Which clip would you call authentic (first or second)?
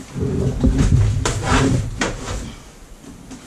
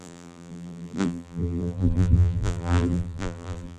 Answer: first